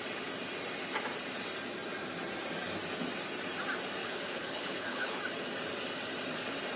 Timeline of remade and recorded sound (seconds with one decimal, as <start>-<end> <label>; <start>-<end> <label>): 0.0-4.0 recorded; 4.0-5.2 remade; 5.2-6.8 recorded